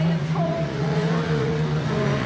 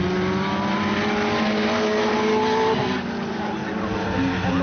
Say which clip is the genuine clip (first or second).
second